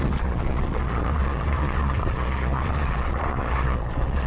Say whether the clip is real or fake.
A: fake